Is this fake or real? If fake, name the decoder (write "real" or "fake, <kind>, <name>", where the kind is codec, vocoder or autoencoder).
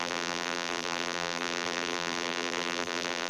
fake, vocoder, BigVGAN v2